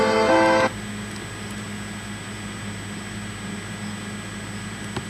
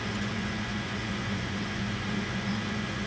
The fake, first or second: second